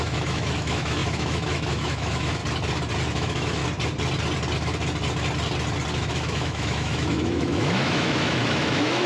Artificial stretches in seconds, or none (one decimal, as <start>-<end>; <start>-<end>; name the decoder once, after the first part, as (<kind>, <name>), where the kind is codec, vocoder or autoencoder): 0.0-2.4 (autoencoder, DAC-VAE); 3.1-3.6; 5.9-9.1